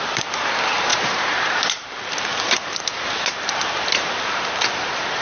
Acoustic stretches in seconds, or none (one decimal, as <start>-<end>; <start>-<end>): none